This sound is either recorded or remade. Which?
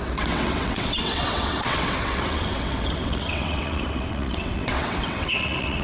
remade